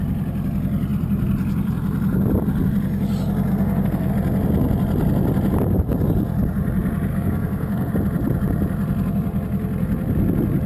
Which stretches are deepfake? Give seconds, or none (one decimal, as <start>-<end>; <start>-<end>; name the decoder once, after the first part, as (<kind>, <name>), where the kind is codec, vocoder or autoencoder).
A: 3.5-4.1 (codec, SNAC); 7.1-7.9